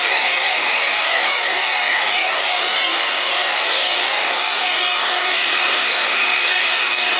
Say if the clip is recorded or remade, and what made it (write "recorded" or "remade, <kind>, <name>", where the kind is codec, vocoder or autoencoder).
remade, codec, DAC